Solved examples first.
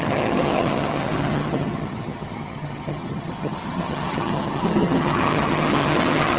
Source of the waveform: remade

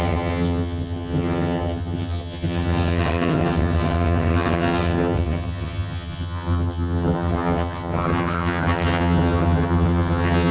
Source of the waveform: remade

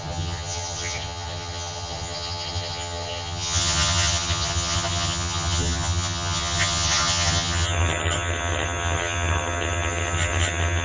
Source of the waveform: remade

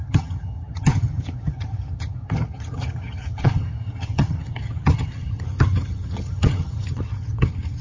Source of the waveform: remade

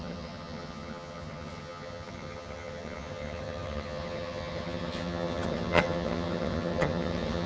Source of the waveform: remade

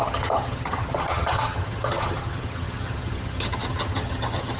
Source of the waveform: remade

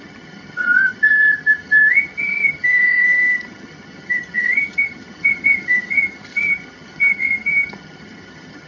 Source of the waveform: remade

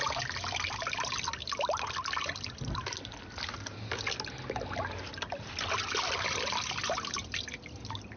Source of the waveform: recorded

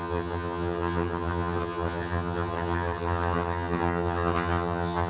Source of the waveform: remade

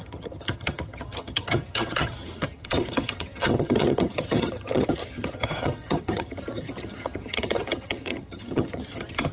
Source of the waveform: remade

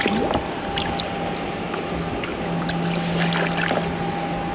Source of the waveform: recorded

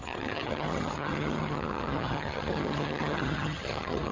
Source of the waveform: remade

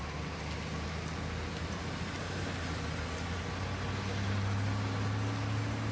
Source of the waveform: recorded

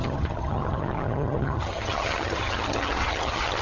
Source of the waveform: remade